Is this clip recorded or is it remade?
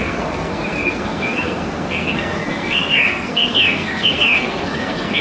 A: remade